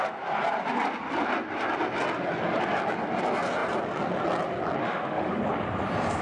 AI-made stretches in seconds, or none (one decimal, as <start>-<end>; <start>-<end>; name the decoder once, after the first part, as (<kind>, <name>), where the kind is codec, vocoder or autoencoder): 4.8-5.4 (autoencoder, DAC-VAE)